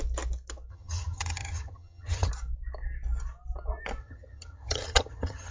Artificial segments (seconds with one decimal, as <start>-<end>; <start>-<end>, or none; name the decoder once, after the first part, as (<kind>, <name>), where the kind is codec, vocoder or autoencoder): 0.7-2.3 (vocoder, HiFi-GAN); 4.0-5.5